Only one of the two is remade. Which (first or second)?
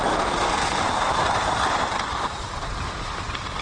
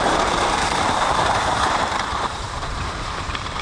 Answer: second